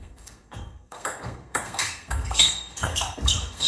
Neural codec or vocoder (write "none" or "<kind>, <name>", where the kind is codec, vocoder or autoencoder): codec, SNAC